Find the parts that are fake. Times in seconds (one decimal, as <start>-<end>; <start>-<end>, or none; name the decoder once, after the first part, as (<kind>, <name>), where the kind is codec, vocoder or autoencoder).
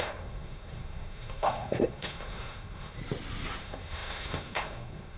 0.0-3.0 (codec, SNAC); 3.6-5.2